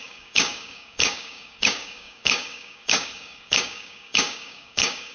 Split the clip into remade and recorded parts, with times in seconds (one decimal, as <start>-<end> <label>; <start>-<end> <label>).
0.0-5.1 remade